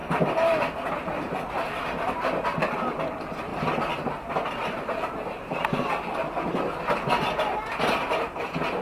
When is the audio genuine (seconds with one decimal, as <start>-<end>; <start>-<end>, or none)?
0.0-8.8